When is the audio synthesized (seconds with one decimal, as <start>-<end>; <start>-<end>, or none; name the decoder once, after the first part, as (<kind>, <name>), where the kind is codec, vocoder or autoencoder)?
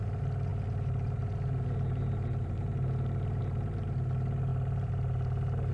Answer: none